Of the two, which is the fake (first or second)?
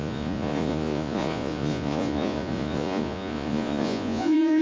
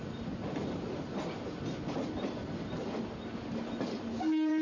first